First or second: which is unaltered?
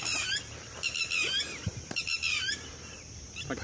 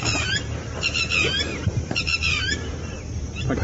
second